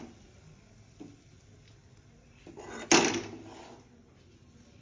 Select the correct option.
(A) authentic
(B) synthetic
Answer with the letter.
A